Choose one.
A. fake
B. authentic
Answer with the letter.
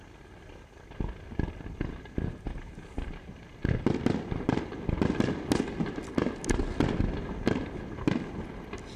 B